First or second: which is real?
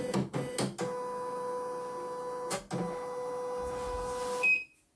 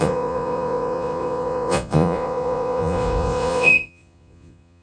first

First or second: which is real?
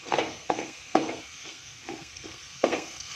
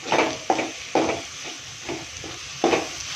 second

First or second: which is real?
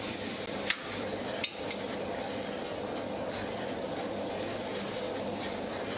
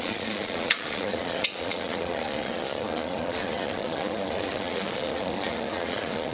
first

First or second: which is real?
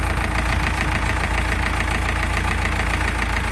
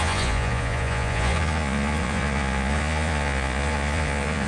first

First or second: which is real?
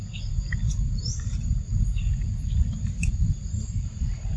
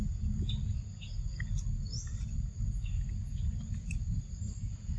second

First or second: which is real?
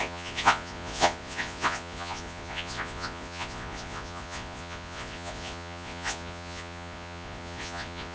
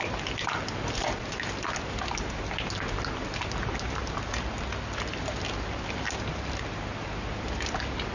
second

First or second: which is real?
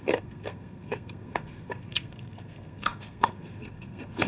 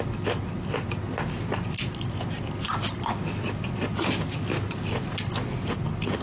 second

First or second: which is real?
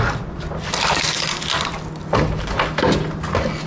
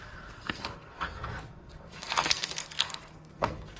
first